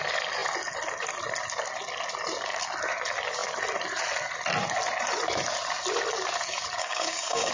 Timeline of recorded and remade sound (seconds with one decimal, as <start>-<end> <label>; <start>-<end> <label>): 0.0-6.8 recorded; 6.8-7.5 remade